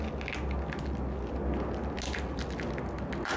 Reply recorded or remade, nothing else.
recorded